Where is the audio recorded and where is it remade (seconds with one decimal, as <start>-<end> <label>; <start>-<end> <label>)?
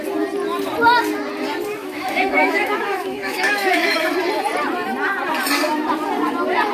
0.0-1.8 recorded; 1.8-4.1 remade; 4.1-6.7 recorded